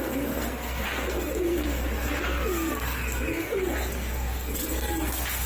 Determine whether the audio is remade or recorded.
remade